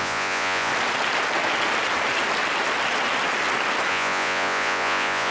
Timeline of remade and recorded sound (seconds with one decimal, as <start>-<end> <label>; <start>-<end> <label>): 0.0-0.7 remade; 0.7-3.9 recorded; 3.9-5.3 remade